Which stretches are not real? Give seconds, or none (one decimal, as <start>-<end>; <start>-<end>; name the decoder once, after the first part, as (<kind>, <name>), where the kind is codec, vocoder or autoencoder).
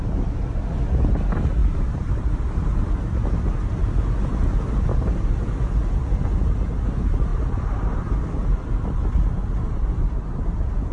1.6-3.5 (vocoder, BigVGAN v2); 4.9-6.5; 7.3-8.0